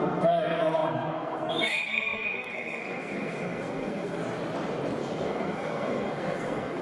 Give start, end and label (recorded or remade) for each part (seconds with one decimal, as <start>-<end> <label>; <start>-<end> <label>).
0.0-4.2 remade; 4.2-5.0 recorded; 5.0-6.8 remade